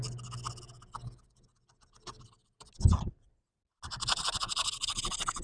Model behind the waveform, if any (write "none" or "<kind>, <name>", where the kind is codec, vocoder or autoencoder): none